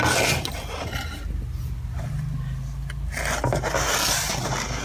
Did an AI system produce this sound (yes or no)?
no